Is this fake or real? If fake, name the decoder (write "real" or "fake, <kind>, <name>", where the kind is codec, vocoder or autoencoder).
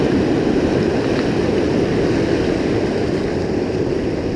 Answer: real